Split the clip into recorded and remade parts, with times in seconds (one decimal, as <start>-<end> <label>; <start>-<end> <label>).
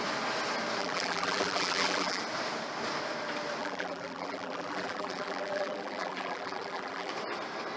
0.0-0.8 recorded; 0.8-2.2 remade; 2.2-3.6 recorded; 3.6-7.1 remade; 7.1-7.8 recorded